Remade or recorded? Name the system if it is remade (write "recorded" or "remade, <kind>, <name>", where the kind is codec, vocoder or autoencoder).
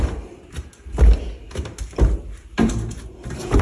recorded